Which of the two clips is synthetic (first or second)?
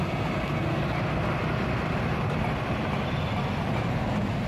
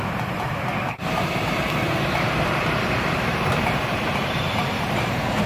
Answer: second